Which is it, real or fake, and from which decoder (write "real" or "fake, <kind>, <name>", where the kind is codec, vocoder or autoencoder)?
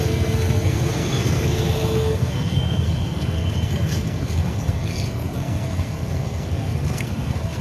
fake, codec, SNAC